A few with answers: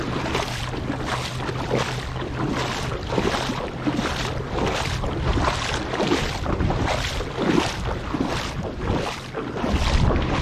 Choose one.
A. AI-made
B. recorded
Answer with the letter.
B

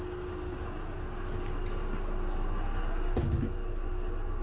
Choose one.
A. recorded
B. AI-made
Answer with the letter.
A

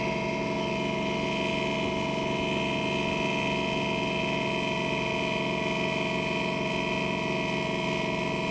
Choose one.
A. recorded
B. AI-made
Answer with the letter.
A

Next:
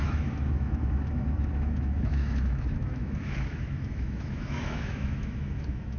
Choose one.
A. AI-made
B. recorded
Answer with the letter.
A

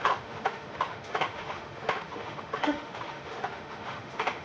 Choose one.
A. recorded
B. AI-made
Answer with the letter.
B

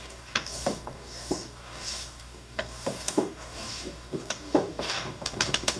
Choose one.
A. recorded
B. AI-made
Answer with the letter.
B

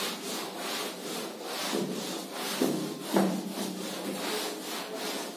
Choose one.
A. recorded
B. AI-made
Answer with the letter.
A